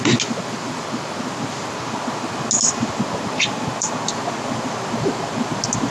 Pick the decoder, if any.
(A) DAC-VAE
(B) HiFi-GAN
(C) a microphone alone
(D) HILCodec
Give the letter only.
C